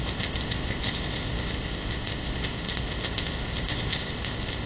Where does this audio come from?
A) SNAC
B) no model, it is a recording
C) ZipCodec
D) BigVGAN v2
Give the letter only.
C